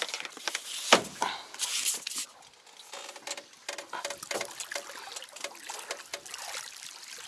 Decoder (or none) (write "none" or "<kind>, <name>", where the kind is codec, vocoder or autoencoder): none